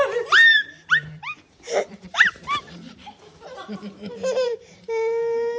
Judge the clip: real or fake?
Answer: fake